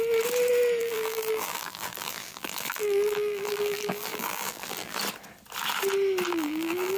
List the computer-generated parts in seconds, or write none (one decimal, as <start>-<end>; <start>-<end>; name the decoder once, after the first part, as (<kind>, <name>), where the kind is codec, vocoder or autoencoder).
0.8-5.0 (vocoder, BigVGAN v2); 6.3-7.0